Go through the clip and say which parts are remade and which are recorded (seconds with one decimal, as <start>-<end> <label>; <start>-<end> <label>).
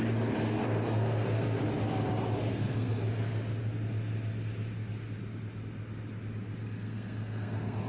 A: 0.0-0.6 recorded; 0.6-1.6 remade; 1.6-2.5 recorded; 2.5-3.0 remade; 3.0-6.6 recorded; 6.6-7.9 remade